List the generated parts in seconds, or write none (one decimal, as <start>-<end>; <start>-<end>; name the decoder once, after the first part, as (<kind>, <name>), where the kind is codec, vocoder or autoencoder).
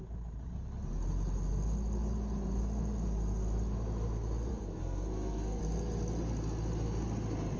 4.5-5.6 (codec, SNAC)